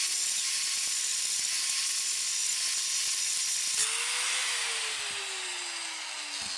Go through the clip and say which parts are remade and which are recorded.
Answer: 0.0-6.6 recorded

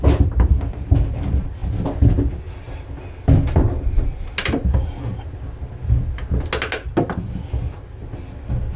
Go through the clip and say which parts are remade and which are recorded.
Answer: 0.0-8.8 recorded

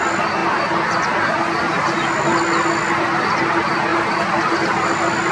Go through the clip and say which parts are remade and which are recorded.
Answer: 0.0-5.3 recorded

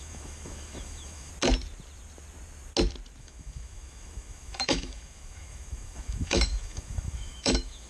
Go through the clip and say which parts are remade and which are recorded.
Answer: 0.0-1.3 remade; 1.3-3.2 recorded; 3.2-7.9 remade

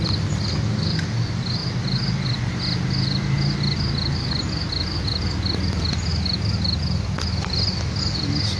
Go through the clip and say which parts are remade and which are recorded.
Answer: 0.0-8.6 recorded

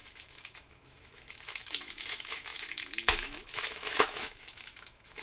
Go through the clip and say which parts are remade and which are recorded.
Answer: 0.0-5.2 remade

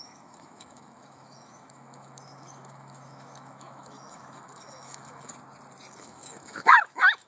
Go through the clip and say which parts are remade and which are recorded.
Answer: 0.0-5.3 remade; 5.3-5.9 recorded; 5.9-7.3 remade